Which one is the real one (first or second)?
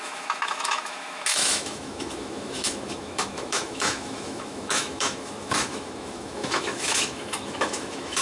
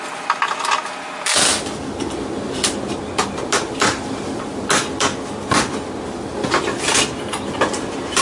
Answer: second